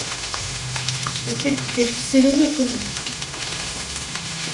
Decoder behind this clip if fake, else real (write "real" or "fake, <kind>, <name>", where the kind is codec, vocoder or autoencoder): fake, autoencoder, DAC-VAE